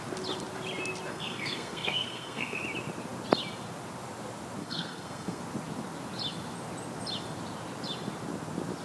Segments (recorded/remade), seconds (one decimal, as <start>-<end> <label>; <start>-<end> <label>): 0.0-1.1 recorded; 1.1-2.6 remade; 2.6-4.6 recorded; 4.6-5.4 remade; 5.4-8.8 recorded

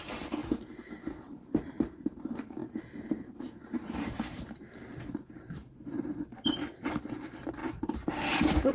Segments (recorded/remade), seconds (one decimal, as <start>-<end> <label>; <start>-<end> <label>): 0.0-0.4 remade; 0.4-1.2 recorded; 1.2-8.7 remade

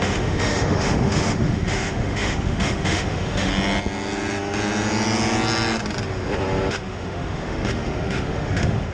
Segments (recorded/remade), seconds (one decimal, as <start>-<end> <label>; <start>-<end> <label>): 0.0-3.5 remade; 3.5-6.7 recorded; 6.7-8.9 remade

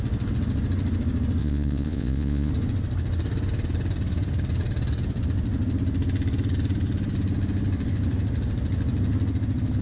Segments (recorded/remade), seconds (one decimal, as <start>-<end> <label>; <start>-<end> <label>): 0.0-1.4 recorded; 1.4-2.5 remade; 2.5-9.8 recorded